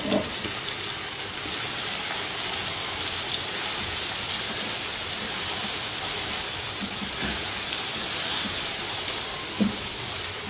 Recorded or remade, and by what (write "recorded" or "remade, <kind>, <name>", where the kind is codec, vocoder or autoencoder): recorded